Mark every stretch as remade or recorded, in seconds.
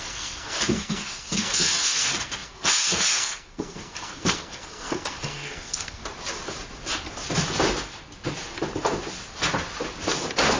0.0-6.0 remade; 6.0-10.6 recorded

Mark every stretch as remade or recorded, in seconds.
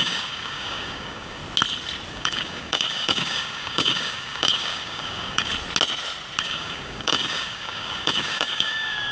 0.0-1.4 remade; 1.4-2.1 recorded; 2.1-5.5 remade; 5.5-6.4 recorded; 6.4-9.1 remade